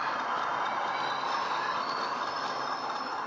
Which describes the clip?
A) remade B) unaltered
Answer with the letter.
B